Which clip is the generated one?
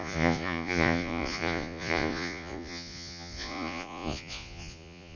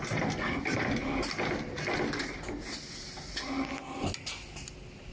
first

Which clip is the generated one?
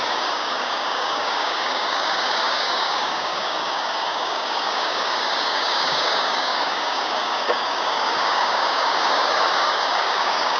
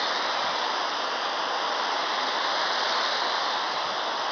first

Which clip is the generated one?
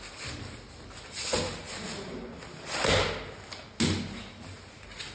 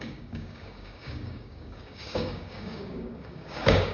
second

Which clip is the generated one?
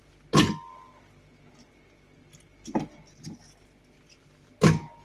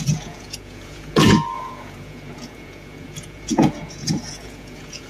second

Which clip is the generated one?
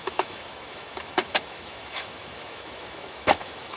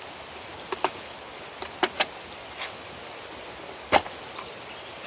first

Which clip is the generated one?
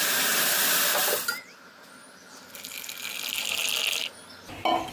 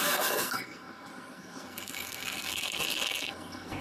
second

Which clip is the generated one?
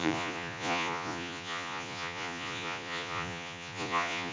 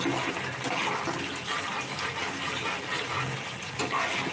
first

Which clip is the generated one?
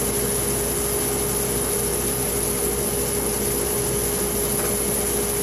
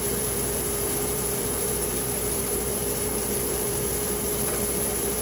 second